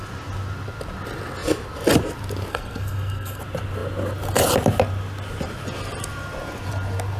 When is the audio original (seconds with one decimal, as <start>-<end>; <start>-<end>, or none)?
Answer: 0.0-2.5; 3.4-7.2